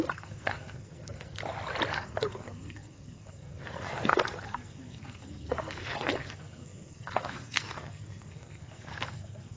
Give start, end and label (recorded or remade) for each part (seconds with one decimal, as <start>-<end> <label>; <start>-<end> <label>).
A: 0.0-1.4 remade; 1.4-1.9 recorded; 1.9-9.6 remade